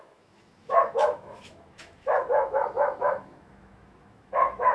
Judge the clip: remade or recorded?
remade